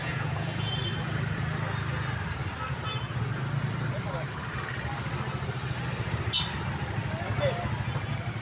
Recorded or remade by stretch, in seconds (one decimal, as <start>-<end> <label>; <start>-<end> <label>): 0.0-0.7 remade; 0.7-8.4 recorded